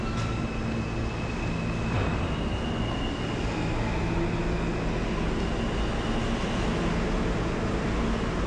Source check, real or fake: real